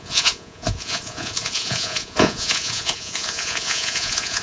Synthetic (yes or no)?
yes